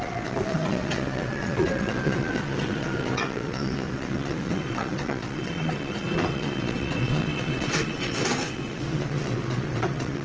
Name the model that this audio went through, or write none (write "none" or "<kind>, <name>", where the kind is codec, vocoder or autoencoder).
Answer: vocoder, WaveNeXt